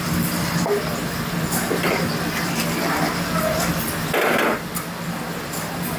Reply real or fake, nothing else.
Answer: real